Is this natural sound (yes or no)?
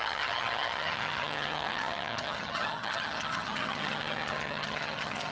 no